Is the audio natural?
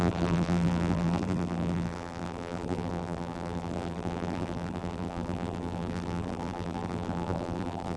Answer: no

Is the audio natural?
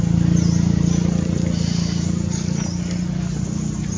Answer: yes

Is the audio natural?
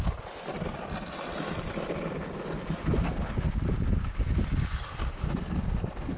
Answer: yes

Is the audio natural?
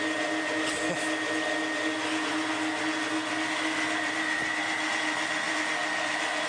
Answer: yes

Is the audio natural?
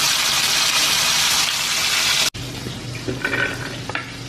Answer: yes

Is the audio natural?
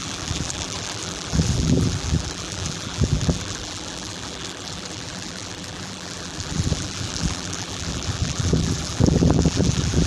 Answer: no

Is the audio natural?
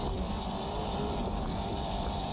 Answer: no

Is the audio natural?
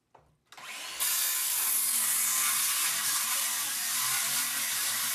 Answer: yes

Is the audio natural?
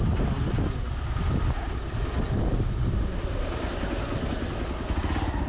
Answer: yes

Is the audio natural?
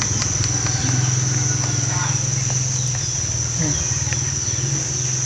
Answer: yes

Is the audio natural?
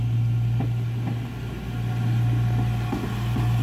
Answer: yes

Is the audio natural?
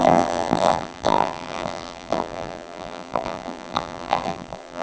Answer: no